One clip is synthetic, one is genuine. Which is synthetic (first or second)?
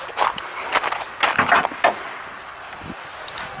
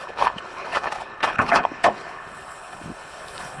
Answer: second